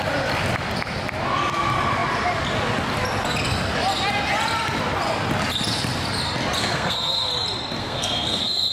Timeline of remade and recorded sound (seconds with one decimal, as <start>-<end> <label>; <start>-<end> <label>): 0.0-6.6 recorded; 6.6-7.3 remade; 7.3-7.8 recorded; 7.8-8.7 remade